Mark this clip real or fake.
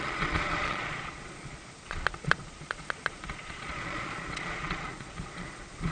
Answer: fake